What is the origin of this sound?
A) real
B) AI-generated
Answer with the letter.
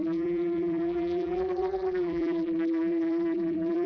B